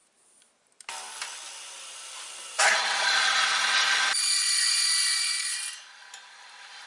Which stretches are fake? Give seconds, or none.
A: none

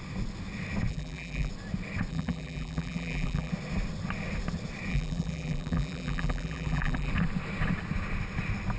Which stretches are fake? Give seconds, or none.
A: 0.9-1.5; 2.1-3.5; 4.9-7.1